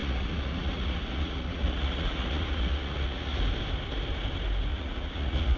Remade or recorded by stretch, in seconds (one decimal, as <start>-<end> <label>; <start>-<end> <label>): 0.0-3.4 remade; 3.4-4.7 recorded; 4.7-5.6 remade